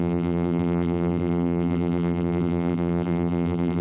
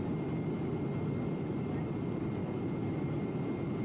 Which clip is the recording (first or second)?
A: second